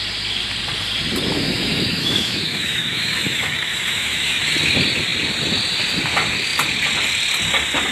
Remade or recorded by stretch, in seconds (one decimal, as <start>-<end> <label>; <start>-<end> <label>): 0.0-1.3 recorded; 1.3-4.4 remade; 4.4-7.9 recorded